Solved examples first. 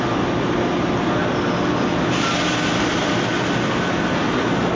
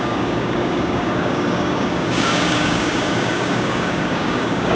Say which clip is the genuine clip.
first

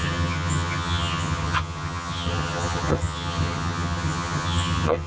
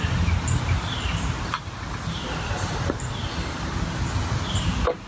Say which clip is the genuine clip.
second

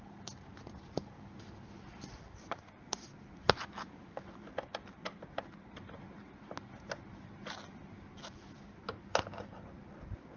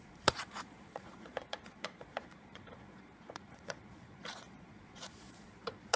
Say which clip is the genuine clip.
first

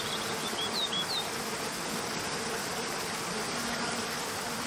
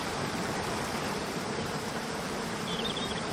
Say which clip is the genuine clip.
first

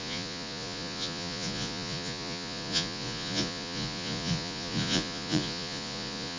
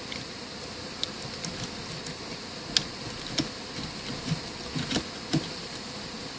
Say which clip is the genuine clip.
second